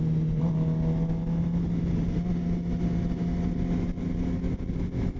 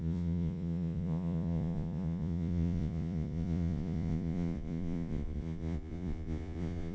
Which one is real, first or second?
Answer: first